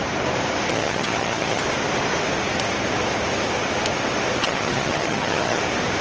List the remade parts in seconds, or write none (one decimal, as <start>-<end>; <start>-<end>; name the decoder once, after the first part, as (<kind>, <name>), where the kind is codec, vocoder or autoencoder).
0.7-1.6 (vocoder, HiFi-GAN); 4.4-5.6